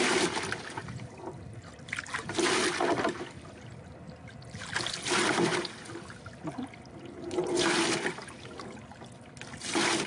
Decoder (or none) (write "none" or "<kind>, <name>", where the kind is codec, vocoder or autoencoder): none